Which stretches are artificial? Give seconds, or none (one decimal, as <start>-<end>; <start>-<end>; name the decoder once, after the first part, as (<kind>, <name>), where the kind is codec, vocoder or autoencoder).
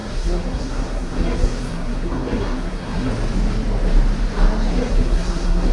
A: 0.0-3.1 (codec, SNAC); 4.7-5.7